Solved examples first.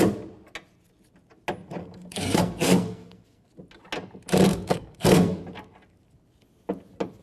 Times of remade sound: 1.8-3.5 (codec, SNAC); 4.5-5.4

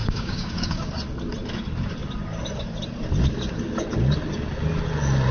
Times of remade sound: 0.0-0.9 (codec, DAC)

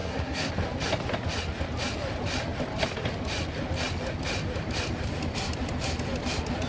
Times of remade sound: 0.0-0.5 (codec, SNAC)

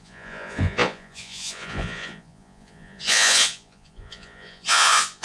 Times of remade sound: 0.0-5.2 (vocoder, Vocos)